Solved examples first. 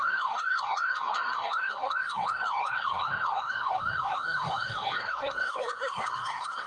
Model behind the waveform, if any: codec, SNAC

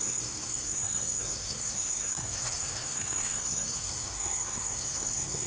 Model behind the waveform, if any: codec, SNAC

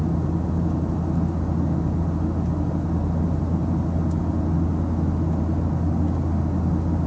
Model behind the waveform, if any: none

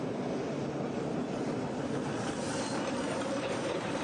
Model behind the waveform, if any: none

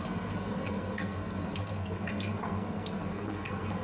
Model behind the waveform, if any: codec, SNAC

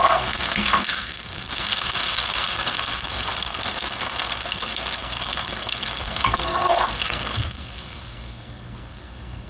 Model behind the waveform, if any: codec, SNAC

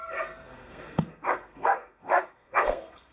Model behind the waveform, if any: codec, SNAC